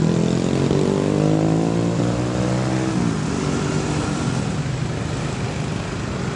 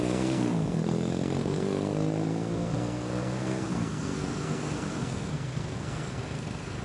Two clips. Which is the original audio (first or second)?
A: first